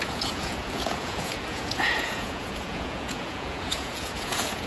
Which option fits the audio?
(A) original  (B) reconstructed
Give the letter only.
B